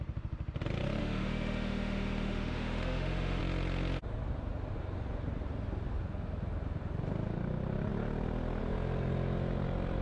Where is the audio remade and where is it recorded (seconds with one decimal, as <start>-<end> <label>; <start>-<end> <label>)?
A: 0.0-1.0 recorded; 1.0-3.4 remade; 3.4-10.0 recorded